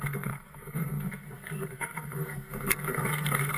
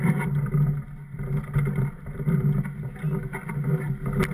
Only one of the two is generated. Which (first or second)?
first